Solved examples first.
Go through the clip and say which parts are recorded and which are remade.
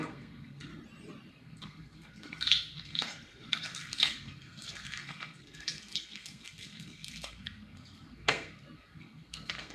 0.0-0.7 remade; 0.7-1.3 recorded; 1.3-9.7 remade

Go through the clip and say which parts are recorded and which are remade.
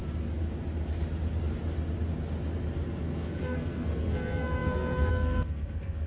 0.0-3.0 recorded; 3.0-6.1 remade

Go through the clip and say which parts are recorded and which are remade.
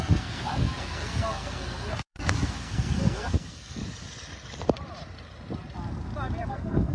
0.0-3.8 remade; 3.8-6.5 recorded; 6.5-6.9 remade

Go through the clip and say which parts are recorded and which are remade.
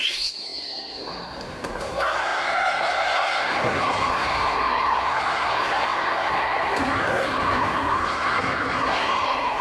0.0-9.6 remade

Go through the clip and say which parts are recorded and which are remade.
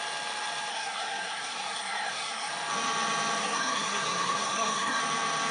0.0-0.7 recorded; 0.7-2.5 remade; 2.5-3.4 recorded; 3.4-5.0 remade; 5.0-5.5 recorded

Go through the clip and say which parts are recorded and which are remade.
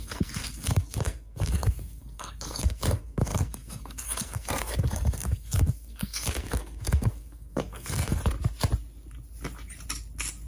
0.0-8.2 remade; 8.2-10.5 recorded